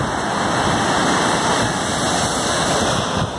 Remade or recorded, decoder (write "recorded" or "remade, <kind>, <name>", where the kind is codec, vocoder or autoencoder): recorded